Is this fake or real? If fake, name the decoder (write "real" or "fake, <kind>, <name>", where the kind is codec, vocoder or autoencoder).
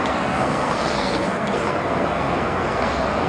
fake, codec, SNAC